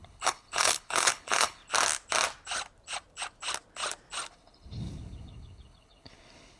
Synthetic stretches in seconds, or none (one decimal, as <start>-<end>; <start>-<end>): 0.0-1.6; 4.3-6.6